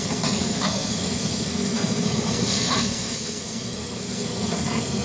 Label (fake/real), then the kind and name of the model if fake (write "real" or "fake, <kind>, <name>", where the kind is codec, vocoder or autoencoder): fake, codec, SNAC